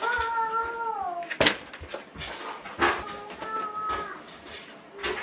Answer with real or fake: real